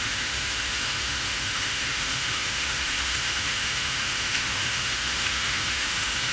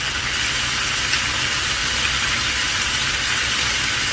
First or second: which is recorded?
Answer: second